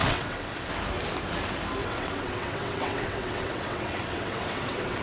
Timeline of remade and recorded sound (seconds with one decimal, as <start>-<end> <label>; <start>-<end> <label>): 0.0-0.7 remade; 0.7-1.8 recorded; 1.8-5.0 remade